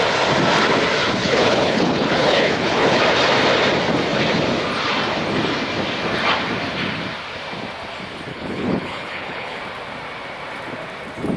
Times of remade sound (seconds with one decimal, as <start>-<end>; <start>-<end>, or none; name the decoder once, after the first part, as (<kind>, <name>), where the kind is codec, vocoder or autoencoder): 1.2-3.0 (codec, HILCodec); 8.3-9.6